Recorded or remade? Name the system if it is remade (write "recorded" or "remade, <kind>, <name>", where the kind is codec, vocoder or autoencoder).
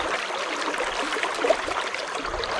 recorded